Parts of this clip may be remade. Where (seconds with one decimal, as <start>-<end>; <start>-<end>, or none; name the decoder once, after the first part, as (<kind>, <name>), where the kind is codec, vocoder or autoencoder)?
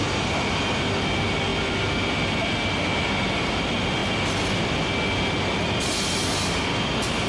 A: none